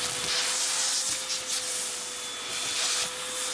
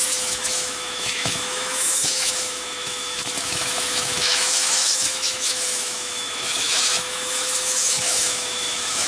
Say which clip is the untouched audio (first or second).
first